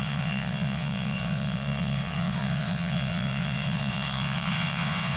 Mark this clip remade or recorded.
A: remade